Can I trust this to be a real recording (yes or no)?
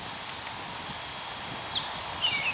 yes